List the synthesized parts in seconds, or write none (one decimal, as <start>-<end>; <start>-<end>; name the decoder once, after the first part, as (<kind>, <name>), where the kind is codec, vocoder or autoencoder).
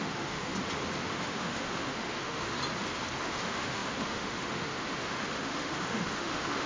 0.0-0.5 (autoencoder, DAC-VAE); 1.0-2.6; 3.2-6.7